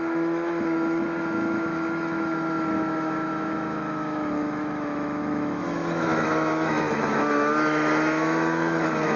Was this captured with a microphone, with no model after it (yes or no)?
no